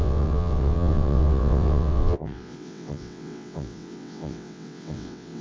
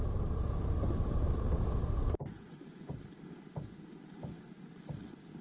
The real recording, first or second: second